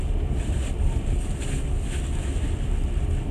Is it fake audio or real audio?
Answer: real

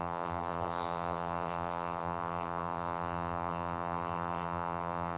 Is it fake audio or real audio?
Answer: fake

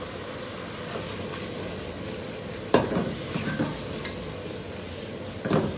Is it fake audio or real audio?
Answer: real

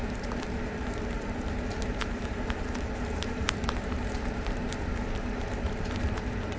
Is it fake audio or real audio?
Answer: fake